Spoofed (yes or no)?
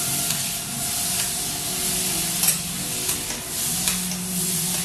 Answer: no